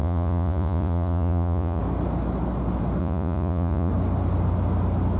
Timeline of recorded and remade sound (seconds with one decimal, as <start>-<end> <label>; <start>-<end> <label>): 0.0-1.8 remade; 1.8-3.0 recorded; 3.0-3.9 remade; 3.9-5.2 recorded